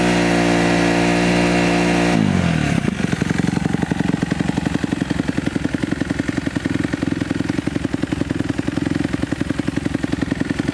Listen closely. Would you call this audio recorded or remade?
recorded